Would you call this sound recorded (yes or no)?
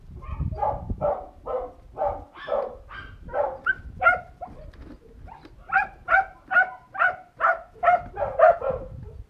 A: yes